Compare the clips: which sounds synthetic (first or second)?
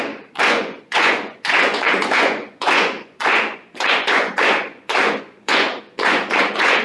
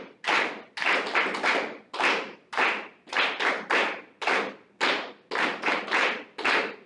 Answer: first